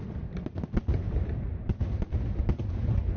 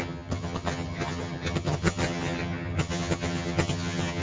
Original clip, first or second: first